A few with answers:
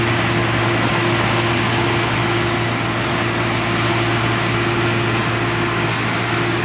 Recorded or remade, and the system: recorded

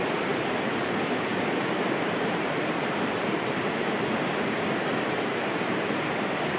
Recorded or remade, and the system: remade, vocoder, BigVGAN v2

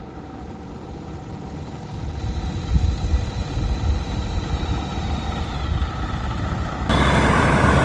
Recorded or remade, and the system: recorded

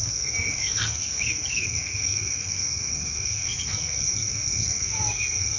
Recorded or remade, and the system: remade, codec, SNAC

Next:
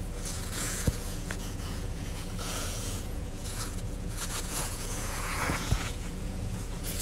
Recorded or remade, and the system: remade, vocoder, Vocos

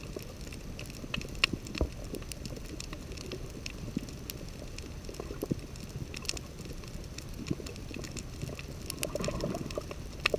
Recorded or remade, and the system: recorded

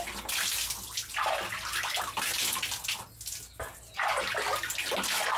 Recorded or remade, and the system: recorded